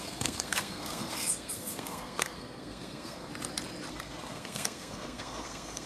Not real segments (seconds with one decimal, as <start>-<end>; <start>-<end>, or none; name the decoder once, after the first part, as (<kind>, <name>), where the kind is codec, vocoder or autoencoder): 0.0-3.3 (codec, SNAC); 3.9-5.9